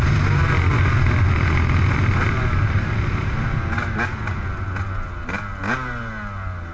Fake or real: real